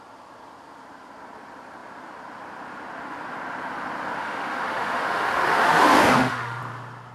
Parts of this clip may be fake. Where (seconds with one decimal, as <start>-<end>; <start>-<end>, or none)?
4.2-6.6